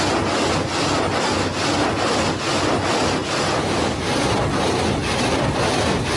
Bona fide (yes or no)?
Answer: yes